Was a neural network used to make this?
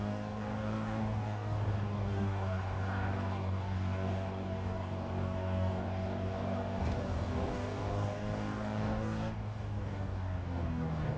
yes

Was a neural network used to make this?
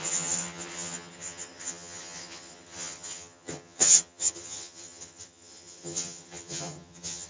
yes